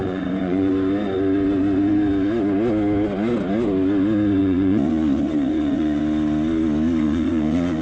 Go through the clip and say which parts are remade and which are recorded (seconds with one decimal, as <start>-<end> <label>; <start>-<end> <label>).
0.0-0.7 remade; 0.7-4.4 recorded; 4.4-6.0 remade; 6.0-7.0 recorded; 7.0-7.8 remade